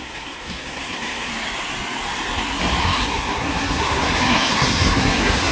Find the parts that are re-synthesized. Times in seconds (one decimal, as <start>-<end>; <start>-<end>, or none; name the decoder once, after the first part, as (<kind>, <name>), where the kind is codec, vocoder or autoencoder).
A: 0.0-1.3 (codec, SNAC); 2.8-5.5